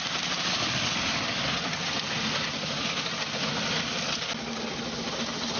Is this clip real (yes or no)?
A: yes